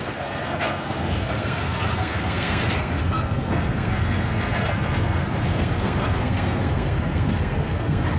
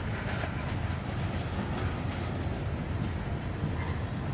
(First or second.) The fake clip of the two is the first